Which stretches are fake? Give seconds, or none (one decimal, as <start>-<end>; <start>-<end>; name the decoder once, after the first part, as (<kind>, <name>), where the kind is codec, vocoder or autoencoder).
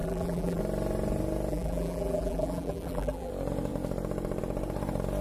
0.0-0.6 (vocoder, BigVGAN v2); 1.5-3.3